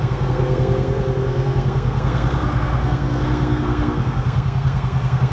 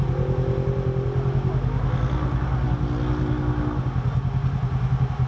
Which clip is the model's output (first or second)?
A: first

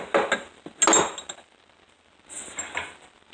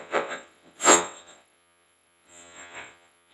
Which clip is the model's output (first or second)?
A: second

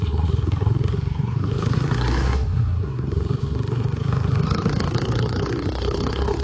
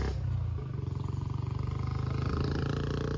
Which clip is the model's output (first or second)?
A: first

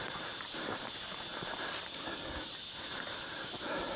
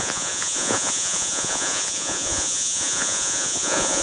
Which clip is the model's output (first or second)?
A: second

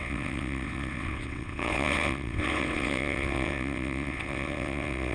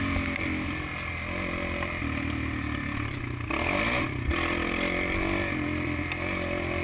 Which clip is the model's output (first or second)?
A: first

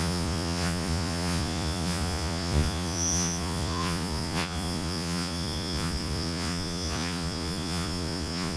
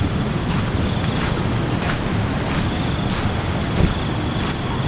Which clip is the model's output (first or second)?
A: first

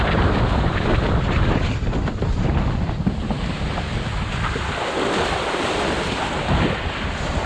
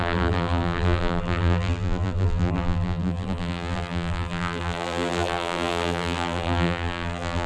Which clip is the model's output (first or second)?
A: second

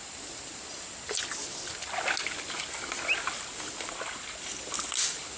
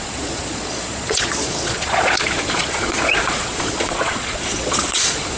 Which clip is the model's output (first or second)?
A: second